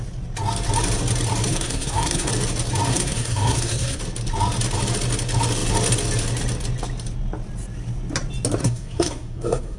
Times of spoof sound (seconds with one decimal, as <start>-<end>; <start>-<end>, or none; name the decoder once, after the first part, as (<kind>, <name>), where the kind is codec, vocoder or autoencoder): 1.5-2.3 (codec, SNAC); 2.9-4.0; 8.6-9.8